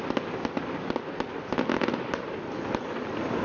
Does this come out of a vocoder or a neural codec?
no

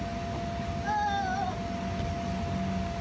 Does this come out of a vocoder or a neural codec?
no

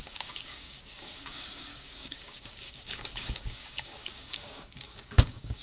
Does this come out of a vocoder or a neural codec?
yes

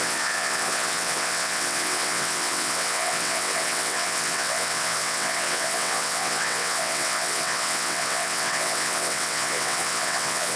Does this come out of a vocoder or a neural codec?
yes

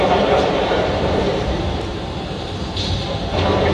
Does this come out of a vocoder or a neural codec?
yes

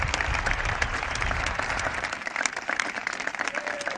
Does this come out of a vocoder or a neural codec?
yes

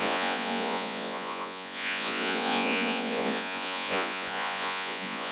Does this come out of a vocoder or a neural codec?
yes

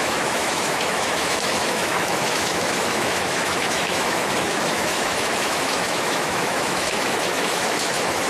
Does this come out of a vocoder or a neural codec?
yes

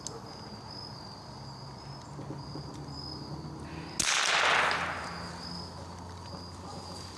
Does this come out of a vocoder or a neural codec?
no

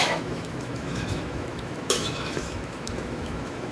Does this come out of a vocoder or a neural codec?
yes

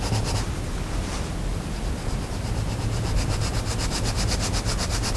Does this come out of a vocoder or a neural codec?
no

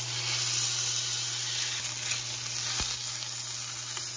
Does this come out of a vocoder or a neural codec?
no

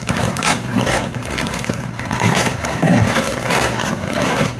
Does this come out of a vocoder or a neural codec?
yes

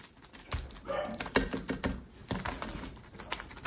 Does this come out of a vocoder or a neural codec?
no